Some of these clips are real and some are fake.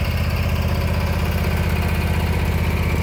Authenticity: real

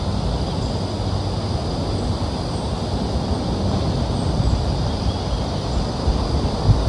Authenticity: real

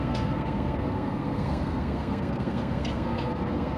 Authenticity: fake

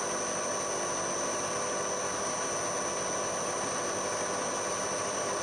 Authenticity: real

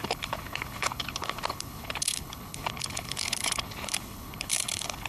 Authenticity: fake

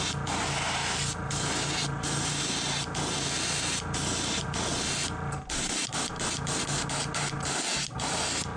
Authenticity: real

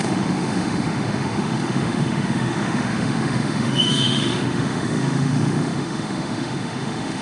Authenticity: fake